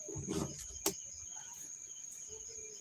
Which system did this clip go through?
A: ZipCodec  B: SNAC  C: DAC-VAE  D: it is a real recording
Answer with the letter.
D